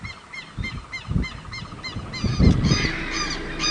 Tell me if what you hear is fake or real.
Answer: real